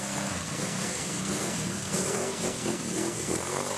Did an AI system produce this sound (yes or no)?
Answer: yes